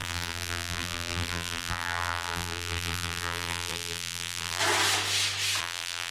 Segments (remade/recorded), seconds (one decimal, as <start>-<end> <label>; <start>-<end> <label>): 0.0-4.6 remade; 4.6-5.6 recorded; 5.6-6.1 remade